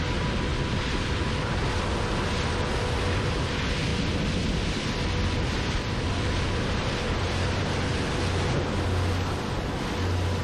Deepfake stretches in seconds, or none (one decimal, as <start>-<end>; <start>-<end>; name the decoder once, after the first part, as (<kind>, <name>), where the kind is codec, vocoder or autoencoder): 0.5-1.7 (vocoder, BigVGAN v2); 3.9-7.6